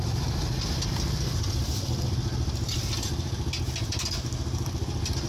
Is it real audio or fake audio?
real